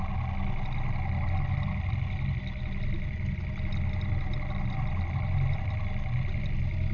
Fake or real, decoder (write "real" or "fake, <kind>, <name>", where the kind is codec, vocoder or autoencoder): real